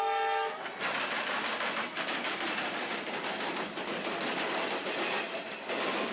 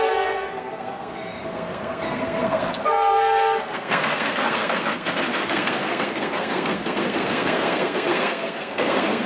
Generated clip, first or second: second